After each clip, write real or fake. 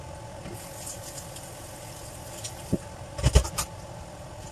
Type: real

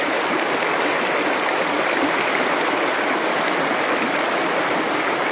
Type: real